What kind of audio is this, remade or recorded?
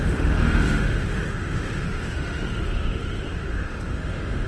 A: remade